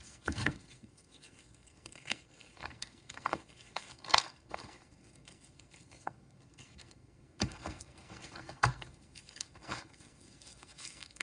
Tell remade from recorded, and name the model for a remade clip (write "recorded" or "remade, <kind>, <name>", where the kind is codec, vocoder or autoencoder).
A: remade, codec, SNAC